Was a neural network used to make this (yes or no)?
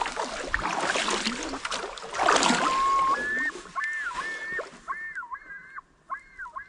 no